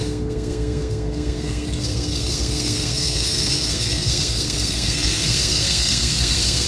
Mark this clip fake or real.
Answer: fake